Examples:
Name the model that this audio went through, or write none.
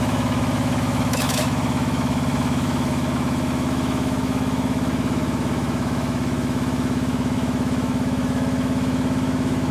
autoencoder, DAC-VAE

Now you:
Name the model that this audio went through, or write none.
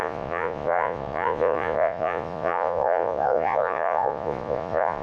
vocoder, Vocos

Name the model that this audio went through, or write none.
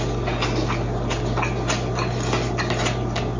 none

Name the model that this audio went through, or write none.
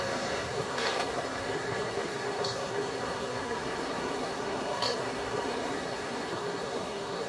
codec, SNAC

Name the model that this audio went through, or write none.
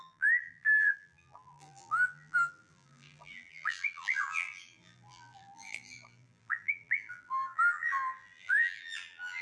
vocoder, BigVGAN v2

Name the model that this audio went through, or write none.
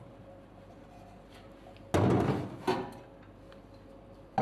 none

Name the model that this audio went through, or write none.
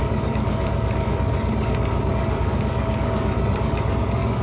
codec, DAC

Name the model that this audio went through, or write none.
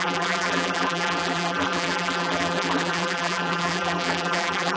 vocoder, BigVGAN v2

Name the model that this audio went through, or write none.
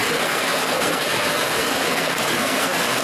codec, SNAC